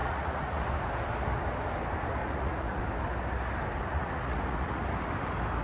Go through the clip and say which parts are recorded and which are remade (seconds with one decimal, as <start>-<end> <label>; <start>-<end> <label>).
0.0-0.6 remade; 0.6-2.2 recorded; 2.2-2.8 remade; 2.8-3.9 recorded; 3.9-4.8 remade; 4.8-5.6 recorded